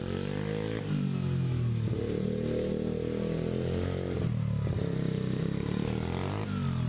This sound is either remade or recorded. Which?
recorded